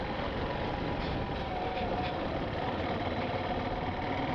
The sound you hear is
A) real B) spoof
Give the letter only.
A